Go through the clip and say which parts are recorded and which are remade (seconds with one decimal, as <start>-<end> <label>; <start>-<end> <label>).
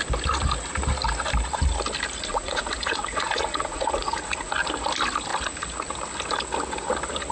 0.0-2.3 recorded; 2.3-4.5 remade; 4.5-7.3 recorded